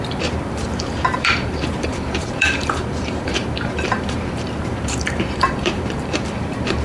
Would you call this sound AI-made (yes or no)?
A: yes